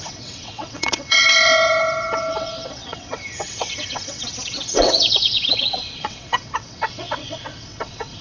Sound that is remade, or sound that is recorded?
remade